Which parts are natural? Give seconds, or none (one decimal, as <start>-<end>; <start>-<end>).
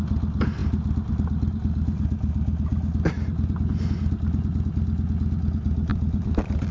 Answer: 0.0-5.9